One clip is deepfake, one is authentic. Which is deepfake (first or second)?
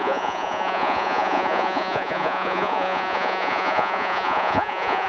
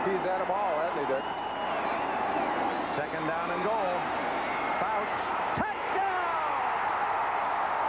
first